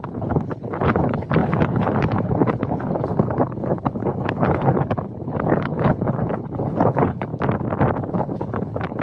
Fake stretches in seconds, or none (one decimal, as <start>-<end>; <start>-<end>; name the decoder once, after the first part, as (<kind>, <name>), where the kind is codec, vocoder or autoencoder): 0.0-7.3 (codec, HILCodec); 8.1-9.0